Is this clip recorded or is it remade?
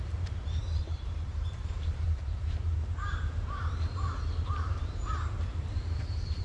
remade